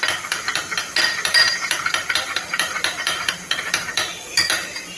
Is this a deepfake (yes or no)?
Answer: yes